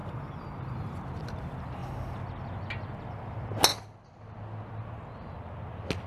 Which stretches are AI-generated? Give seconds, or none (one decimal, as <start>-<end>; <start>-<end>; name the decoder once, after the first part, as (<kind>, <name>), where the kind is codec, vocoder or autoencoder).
0.0-1.0 (vocoder, BigVGAN v2)